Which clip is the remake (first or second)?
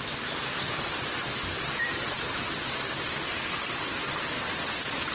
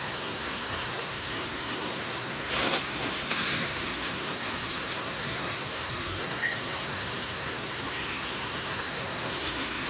second